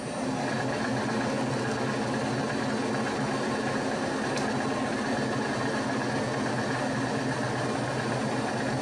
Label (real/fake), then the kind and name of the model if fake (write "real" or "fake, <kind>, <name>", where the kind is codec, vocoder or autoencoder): real